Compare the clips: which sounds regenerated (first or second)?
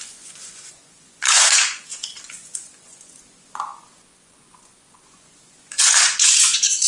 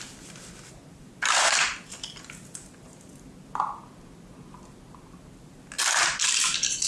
first